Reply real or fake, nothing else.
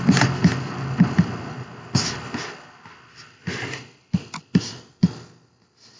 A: real